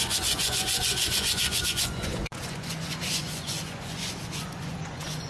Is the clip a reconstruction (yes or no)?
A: yes